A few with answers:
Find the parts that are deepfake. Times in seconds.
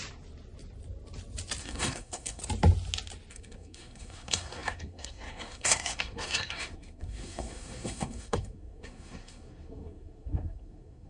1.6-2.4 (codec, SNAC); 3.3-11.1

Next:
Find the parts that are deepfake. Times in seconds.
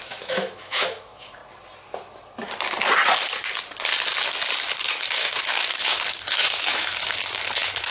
0.0-1.4 (autoencoder, DAC-VAE); 4.9-7.9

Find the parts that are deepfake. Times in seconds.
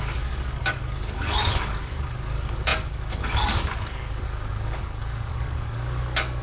0.0-6.4 (codec, DAC)